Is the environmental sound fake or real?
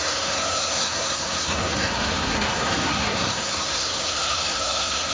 fake